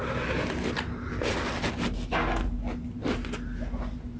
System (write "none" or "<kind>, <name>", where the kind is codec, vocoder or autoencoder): none